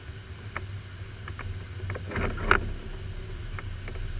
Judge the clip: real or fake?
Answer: real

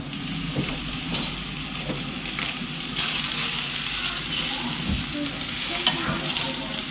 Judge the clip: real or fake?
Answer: real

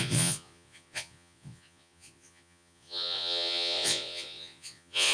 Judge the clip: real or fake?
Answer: fake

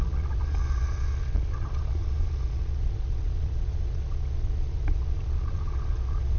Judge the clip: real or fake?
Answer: fake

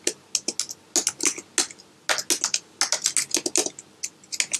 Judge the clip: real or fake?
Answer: real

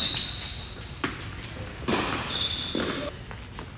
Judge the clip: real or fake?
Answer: real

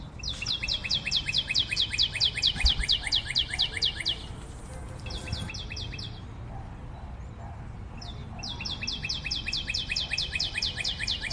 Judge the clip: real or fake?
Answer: real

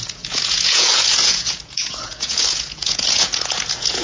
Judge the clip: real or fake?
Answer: fake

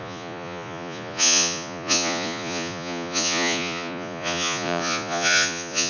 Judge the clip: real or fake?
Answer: fake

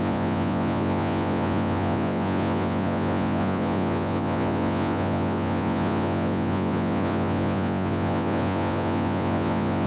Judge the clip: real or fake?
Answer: fake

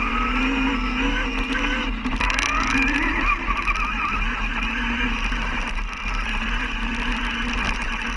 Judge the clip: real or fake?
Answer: real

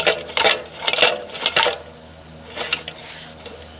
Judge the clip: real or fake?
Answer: real